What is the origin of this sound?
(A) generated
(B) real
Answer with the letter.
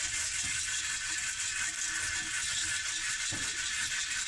B